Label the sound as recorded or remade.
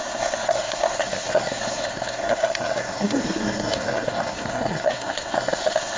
remade